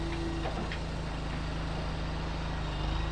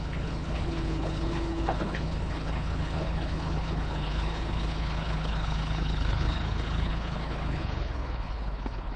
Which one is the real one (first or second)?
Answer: first